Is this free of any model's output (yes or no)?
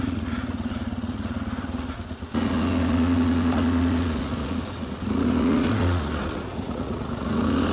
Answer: no